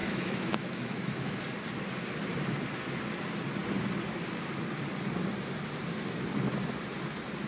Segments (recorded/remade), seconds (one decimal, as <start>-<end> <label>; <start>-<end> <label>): 0.0-1.4 remade; 1.4-7.5 recorded